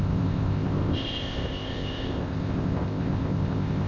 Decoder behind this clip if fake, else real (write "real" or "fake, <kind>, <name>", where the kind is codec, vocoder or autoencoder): fake, codec, ZipCodec